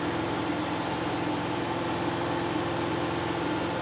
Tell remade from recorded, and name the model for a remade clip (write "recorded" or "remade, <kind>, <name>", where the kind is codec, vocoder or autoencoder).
recorded